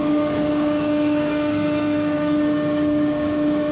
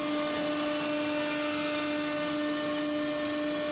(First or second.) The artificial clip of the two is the first